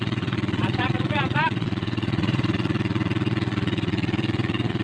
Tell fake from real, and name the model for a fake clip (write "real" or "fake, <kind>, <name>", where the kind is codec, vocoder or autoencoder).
fake, vocoder, Vocos